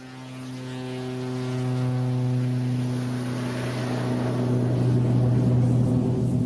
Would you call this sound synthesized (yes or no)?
no